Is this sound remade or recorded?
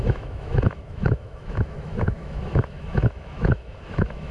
remade